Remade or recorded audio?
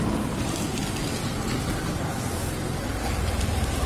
recorded